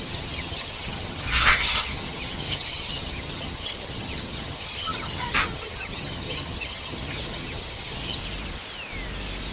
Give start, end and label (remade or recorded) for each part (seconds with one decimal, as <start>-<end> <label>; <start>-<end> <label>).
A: 0.0-8.2 remade; 8.2-9.5 recorded